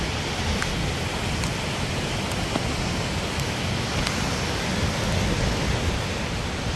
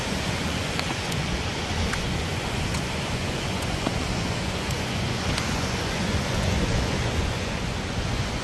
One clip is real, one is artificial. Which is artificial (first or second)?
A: second